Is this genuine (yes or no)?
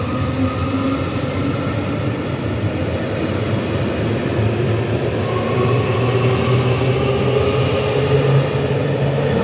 yes